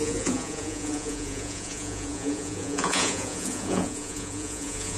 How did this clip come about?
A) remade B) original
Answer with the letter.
A